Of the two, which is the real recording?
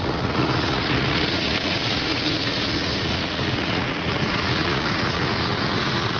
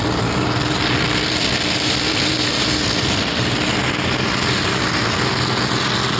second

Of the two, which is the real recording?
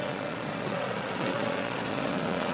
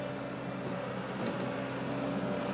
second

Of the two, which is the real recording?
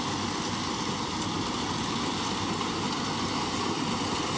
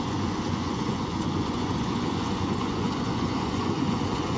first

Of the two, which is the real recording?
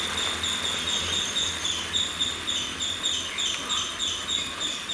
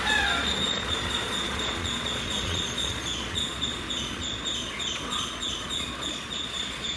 first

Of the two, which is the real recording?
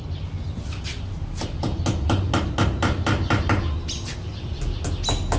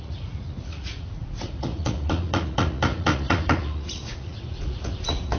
first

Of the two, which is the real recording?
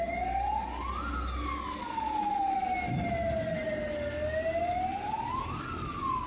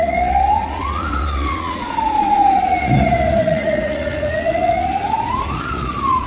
first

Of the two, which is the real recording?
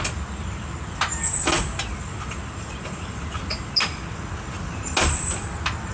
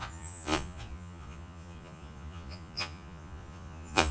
first